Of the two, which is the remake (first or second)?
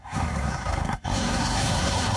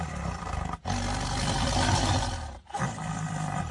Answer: first